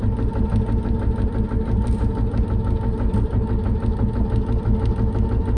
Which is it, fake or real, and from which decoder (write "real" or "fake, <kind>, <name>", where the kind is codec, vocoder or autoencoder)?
real